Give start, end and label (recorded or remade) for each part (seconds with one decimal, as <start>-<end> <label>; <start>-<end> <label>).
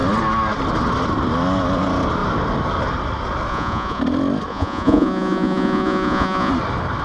0.0-3.5 recorded; 3.5-4.0 remade; 4.0-4.5 recorded; 4.5-6.5 remade; 6.5-7.0 recorded